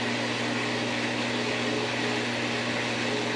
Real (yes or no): yes